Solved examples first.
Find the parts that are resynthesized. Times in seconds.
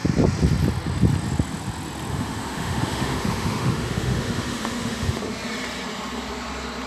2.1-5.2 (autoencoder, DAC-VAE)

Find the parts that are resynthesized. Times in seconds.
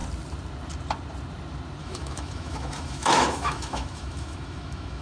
1.8-5.0 (autoencoder, DAC-VAE)